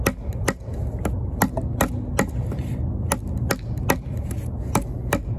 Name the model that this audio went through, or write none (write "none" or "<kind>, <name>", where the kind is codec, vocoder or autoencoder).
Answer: none